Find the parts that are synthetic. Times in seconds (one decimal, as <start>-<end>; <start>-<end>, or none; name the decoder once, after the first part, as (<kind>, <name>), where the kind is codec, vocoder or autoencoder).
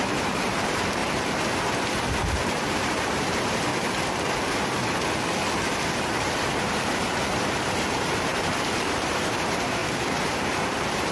0.0-1.0 (vocoder, BigVGAN v2); 2.5-3.7; 6.6-9.8; 10.4-11.1